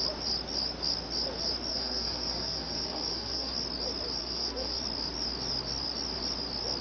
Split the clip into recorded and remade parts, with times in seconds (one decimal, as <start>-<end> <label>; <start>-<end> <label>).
0.0-1.7 recorded; 1.7-3.5 remade; 3.5-4.2 recorded; 4.2-4.8 remade; 4.8-6.8 recorded